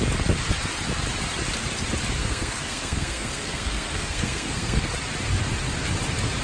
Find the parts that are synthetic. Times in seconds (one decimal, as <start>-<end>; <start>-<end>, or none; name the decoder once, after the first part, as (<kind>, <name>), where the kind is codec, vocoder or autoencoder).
2.2-4.9 (codec, SNAC)